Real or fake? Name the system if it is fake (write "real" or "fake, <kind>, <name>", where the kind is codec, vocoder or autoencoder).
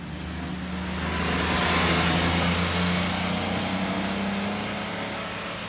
real